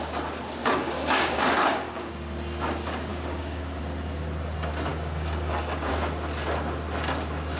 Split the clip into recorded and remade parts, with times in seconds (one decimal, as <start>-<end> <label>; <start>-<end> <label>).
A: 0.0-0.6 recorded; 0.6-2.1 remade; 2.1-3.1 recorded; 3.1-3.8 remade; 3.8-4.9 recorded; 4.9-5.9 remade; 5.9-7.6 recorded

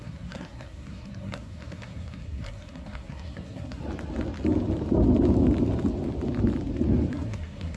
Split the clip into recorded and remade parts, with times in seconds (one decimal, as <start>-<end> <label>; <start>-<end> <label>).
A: 0.0-3.8 remade; 3.8-7.1 recorded; 7.1-7.8 remade

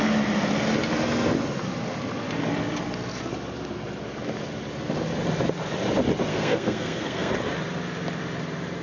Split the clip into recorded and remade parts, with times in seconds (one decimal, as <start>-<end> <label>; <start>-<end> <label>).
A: 0.0-6.3 recorded; 6.3-7.3 remade; 7.3-8.8 recorded